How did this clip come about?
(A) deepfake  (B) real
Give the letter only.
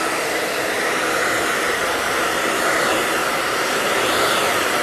B